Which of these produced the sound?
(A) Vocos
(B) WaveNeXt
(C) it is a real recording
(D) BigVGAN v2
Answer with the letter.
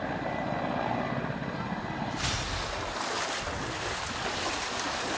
C